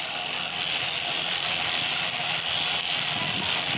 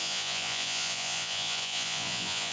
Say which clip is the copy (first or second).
second